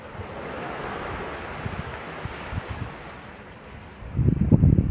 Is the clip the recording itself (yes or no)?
yes